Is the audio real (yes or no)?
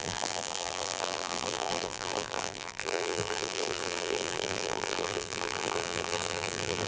no